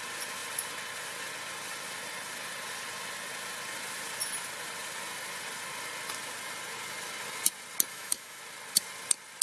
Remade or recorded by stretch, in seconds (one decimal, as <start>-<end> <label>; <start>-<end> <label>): 0.0-7.9 recorded; 7.9-8.4 remade; 8.4-9.4 recorded